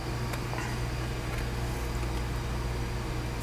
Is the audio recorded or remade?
recorded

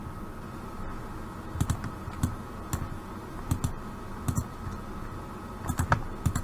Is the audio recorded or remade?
recorded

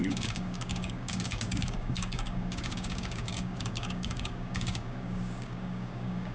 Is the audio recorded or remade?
remade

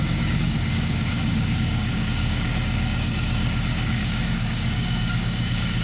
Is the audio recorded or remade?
remade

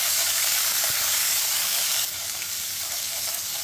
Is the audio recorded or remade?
remade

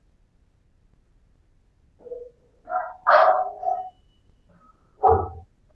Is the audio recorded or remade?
recorded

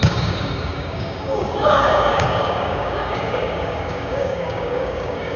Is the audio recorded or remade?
remade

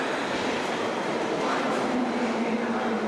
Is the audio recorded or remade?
recorded